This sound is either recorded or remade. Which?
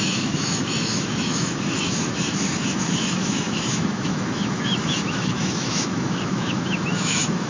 remade